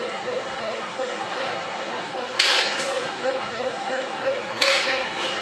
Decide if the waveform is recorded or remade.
remade